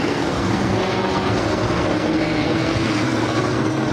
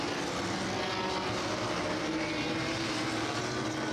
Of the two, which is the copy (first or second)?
first